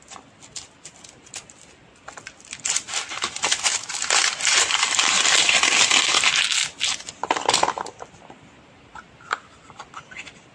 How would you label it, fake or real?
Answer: real